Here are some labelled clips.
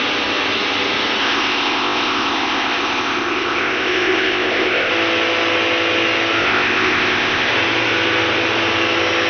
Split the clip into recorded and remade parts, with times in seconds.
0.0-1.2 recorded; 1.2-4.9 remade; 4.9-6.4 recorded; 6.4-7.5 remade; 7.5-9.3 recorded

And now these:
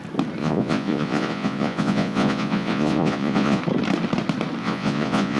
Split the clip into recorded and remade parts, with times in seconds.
0.0-0.4 recorded; 0.4-3.6 remade; 3.6-4.6 recorded; 4.6-5.4 remade